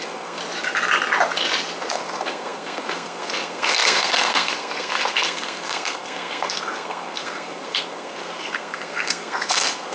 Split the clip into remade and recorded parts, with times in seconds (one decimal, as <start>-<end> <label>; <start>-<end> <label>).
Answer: 0.0-0.4 remade; 0.4-1.8 recorded; 1.8-9.9 remade